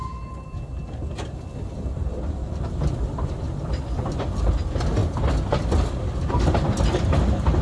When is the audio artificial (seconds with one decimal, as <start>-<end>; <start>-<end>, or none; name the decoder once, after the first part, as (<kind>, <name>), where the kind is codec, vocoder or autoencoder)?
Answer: 2.4-4.2 (vocoder, BigVGAN v2)

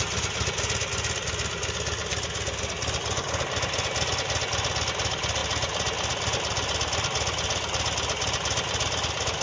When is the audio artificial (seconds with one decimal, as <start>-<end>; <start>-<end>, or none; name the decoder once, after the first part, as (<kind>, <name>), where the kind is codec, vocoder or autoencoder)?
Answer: none

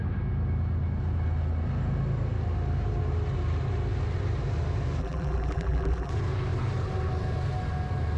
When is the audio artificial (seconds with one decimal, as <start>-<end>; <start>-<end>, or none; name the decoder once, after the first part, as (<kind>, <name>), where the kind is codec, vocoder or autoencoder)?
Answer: 5.0-6.1 (vocoder, BigVGAN v2)

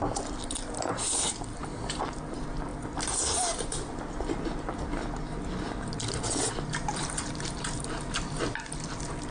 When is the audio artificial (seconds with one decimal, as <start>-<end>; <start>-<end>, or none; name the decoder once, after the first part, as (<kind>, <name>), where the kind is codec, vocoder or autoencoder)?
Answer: 6.9-8.9 (vocoder, BigVGAN v2)